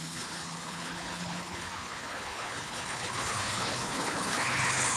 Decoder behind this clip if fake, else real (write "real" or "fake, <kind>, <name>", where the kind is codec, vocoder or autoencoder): fake, codec, HILCodec